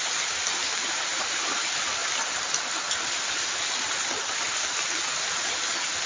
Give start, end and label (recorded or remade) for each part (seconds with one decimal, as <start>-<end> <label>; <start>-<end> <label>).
0.0-1.1 recorded; 1.1-1.6 remade; 1.6-6.1 recorded